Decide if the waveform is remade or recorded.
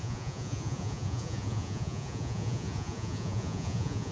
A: remade